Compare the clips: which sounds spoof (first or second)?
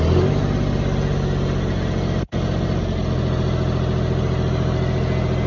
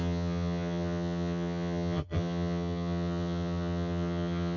second